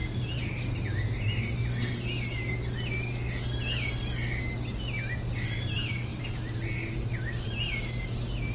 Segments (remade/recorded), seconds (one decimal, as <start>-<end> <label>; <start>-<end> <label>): 0.0-6.1 recorded; 6.1-7.6 remade; 7.6-8.5 recorded